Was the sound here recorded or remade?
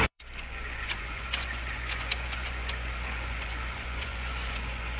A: remade